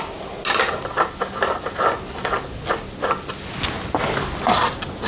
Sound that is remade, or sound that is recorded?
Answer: recorded